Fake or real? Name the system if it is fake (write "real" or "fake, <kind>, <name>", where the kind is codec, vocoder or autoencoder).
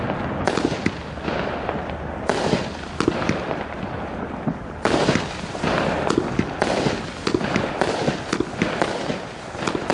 real